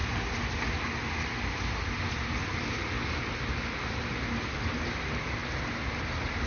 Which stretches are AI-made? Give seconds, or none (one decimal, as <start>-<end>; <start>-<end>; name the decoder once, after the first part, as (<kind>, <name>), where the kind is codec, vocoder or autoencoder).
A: none